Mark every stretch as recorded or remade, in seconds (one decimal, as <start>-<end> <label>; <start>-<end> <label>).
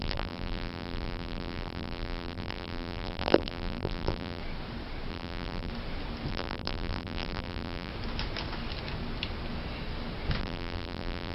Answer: 0.0-4.4 remade; 4.4-5.1 recorded; 5.1-5.7 remade; 5.7-6.3 recorded; 6.3-7.9 remade; 7.9-10.4 recorded; 10.4-11.3 remade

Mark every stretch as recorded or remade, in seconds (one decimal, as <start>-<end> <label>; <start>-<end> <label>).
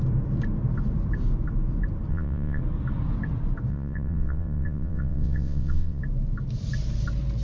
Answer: 0.0-2.1 recorded; 2.1-2.6 remade; 2.6-3.7 recorded; 3.7-6.0 remade; 6.0-7.4 recorded